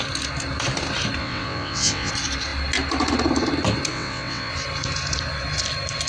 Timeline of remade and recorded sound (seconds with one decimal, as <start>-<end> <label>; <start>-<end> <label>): 0.0-1.2 recorded; 1.2-2.1 remade; 2.1-3.9 recorded; 3.9-4.5 remade; 4.5-6.1 recorded